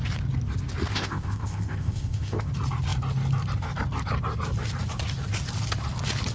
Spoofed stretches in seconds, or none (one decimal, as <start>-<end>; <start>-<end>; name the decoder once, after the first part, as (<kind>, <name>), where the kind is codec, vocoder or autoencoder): 0.9-2.5 (codec, ZipCodec)